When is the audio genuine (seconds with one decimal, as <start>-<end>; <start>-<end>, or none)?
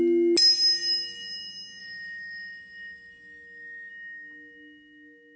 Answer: 0.0-1.8; 3.9-5.4